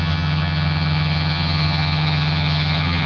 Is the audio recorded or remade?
remade